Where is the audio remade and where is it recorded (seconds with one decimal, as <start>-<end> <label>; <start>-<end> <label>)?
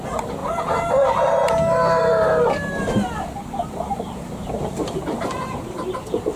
0.0-3.6 recorded; 3.6-5.0 remade; 5.0-6.4 recorded